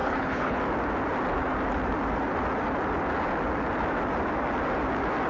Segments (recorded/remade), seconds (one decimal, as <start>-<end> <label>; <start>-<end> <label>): 0.0-0.6 remade; 0.6-5.3 recorded